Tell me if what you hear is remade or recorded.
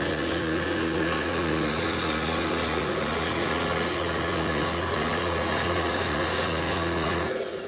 remade